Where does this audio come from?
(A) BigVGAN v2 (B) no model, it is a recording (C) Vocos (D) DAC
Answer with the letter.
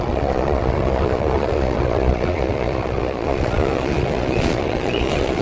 C